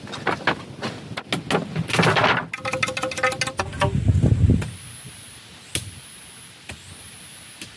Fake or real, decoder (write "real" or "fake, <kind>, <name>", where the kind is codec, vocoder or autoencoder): real